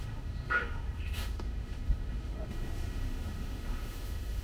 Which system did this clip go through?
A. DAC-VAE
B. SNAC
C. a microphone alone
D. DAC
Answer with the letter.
A